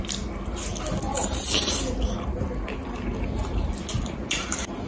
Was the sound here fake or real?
real